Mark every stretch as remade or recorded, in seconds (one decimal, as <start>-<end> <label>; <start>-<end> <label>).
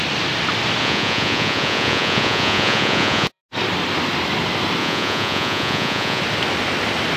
0.0-0.8 recorded; 0.8-3.4 remade; 3.4-4.8 recorded; 4.8-6.2 remade; 6.2-7.2 recorded